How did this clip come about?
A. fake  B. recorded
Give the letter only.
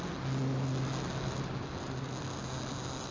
B